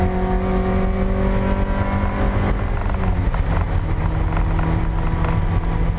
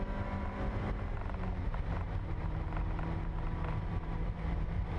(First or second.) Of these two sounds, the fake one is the second